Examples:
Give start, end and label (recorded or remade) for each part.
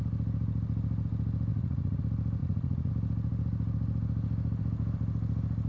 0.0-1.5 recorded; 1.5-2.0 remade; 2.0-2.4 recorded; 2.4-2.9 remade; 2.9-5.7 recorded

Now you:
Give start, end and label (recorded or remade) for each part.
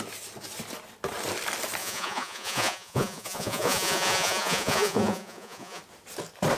0.0-1.8 recorded; 1.8-5.8 remade; 5.8-6.6 recorded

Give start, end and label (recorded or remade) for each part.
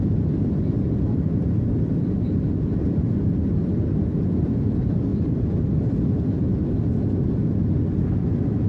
0.0-5.1 remade; 5.1-5.7 recorded; 5.7-6.5 remade; 6.5-7.7 recorded; 7.7-8.7 remade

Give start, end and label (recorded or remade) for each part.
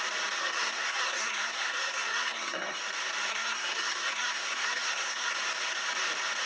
0.0-0.4 recorded; 0.4-2.8 remade; 2.8-3.3 recorded; 3.3-5.3 remade; 5.3-6.5 recorded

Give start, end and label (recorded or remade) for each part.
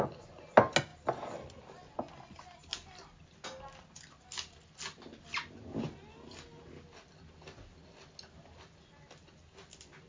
0.0-10.1 recorded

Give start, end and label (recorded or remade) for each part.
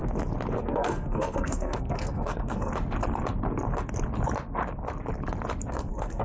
0.0-0.6 recorded; 0.6-2.7 remade; 2.7-5.7 recorded; 5.7-6.2 remade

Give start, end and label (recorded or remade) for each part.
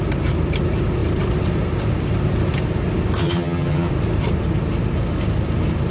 0.0-3.2 recorded; 3.2-3.9 remade; 3.9-5.9 recorded